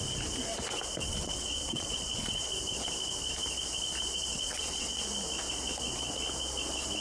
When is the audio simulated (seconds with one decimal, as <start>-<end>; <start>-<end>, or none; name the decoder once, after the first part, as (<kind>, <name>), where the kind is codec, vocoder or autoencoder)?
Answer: 1.0-2.5 (vocoder, WaveNeXt); 4.3-5.0